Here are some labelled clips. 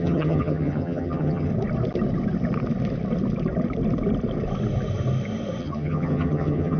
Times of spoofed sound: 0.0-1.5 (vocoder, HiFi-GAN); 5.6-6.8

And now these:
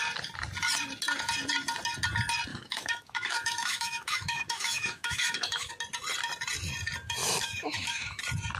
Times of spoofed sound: 2.5-5.7 (autoencoder, DAC-VAE); 7.2-8.2